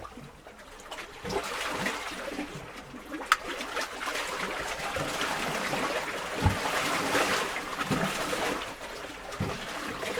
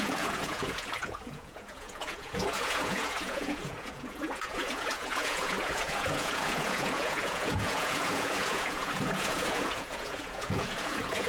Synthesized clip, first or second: second